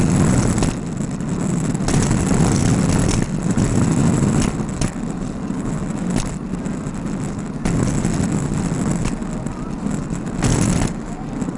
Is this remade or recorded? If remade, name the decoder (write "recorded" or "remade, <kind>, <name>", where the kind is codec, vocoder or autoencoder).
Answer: recorded